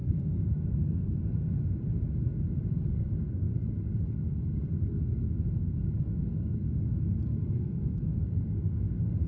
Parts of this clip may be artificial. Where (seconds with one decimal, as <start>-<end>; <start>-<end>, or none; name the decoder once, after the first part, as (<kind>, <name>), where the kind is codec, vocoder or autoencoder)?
0.0-1.6 (codec, SNAC); 2.7-3.5; 4.4-9.3